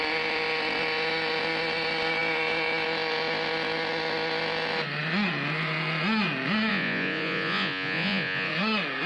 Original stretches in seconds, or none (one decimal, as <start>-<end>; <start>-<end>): 0.0-6.7; 8.5-9.1